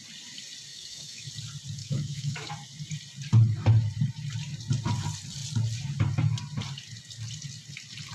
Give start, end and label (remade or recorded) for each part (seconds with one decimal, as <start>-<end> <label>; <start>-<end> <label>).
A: 0.0-0.7 recorded; 0.7-1.3 remade; 1.3-1.8 recorded; 1.8-2.5 remade; 2.5-8.1 recorded